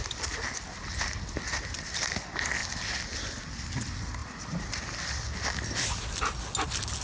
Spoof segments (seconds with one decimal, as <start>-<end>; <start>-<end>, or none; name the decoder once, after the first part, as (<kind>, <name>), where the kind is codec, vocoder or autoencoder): none